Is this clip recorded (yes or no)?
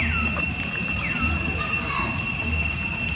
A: yes